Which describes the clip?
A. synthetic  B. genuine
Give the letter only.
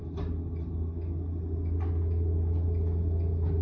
B